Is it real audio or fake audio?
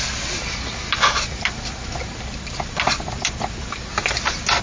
real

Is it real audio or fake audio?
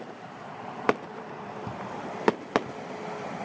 fake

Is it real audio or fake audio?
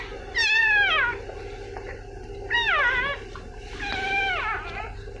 real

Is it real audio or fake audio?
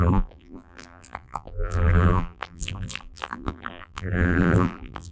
fake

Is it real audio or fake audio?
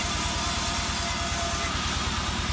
real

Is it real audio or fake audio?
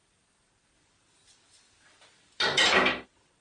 fake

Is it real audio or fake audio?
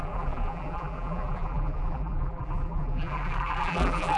fake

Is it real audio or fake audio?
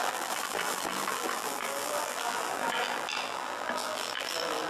fake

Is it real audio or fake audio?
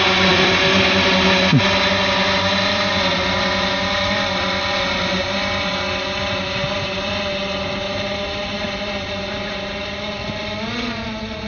fake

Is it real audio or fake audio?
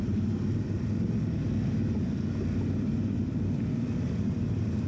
fake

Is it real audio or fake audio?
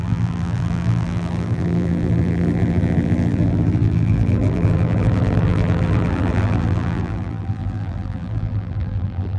fake